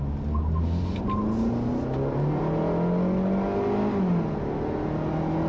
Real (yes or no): yes